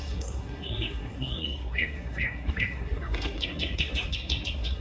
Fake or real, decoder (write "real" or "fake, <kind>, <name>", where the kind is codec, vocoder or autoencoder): fake, codec, SNAC